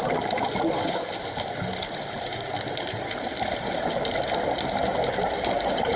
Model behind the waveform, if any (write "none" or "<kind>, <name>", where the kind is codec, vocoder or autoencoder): none